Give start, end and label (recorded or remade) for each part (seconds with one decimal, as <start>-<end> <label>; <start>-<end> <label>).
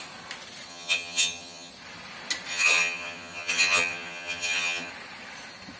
0.0-0.7 recorded; 0.7-1.7 remade; 1.7-2.5 recorded; 2.5-4.9 remade; 4.9-5.8 recorded